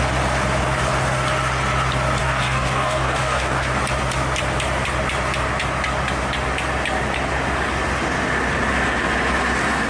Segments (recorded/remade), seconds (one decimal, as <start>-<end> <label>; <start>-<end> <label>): 0.0-2.2 recorded; 2.2-3.8 remade; 3.8-9.9 recorded